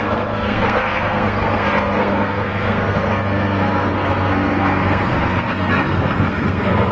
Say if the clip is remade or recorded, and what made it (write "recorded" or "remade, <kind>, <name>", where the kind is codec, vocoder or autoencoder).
remade, codec, SNAC